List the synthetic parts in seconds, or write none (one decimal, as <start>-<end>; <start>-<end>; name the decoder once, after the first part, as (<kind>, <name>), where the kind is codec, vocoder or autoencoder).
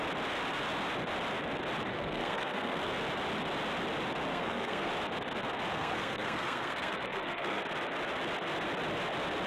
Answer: 1.9-2.9 (codec, SNAC); 4.3-4.9; 5.7-7.6